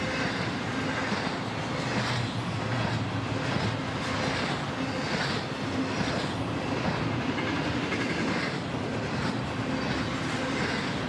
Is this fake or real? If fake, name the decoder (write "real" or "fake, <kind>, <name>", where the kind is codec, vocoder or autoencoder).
real